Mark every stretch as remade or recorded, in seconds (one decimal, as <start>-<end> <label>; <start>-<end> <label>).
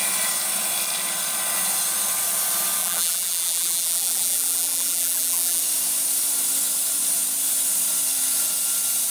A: 0.0-2.8 recorded; 2.8-5.6 remade; 5.6-9.1 recorded